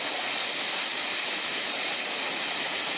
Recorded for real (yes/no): yes